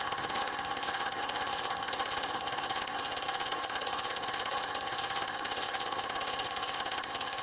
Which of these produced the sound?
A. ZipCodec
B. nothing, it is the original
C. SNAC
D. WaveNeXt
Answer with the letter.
A